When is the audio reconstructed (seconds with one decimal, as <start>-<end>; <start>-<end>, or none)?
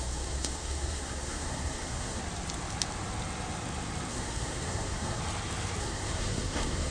0.0-2.2; 4.1-5.2; 5.8-6.9